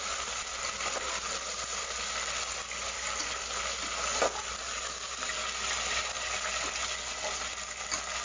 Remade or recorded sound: recorded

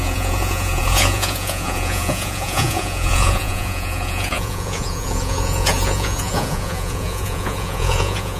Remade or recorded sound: remade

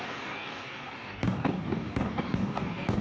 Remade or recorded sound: remade